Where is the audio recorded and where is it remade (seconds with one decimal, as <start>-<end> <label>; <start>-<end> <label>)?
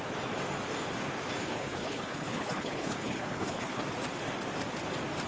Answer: 0.0-1.4 recorded; 1.4-3.8 remade; 3.8-5.3 recorded